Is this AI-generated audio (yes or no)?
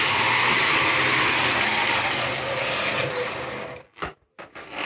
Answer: no